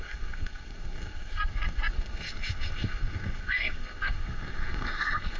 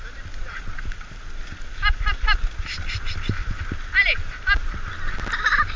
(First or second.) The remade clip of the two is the first